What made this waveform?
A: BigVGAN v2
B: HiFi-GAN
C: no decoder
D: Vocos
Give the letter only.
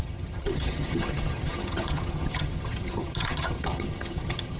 B